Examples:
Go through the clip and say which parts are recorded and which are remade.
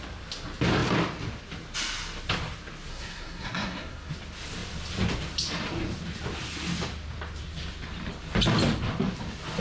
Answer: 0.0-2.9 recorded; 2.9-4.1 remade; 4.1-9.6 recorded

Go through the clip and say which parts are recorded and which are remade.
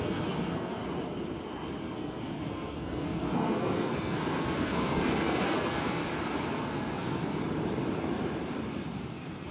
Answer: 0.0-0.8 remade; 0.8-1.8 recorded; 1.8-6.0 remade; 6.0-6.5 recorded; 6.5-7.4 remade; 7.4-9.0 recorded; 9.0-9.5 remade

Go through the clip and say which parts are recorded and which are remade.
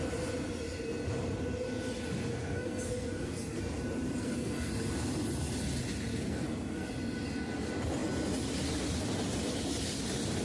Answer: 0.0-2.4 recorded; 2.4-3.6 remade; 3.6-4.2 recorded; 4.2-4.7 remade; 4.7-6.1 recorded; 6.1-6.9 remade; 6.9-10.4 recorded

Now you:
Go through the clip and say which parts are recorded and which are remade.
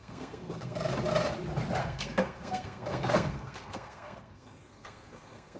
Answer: 0.0-0.9 remade; 0.9-1.8 recorded; 1.8-5.6 remade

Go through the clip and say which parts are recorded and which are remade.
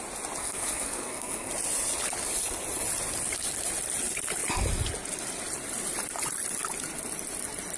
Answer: 0.0-0.4 recorded; 0.4-1.5 remade; 1.5-7.8 recorded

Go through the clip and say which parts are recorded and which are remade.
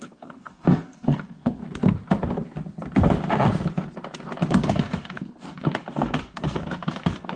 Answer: 0.0-1.6 remade; 1.6-4.5 recorded; 4.5-7.4 remade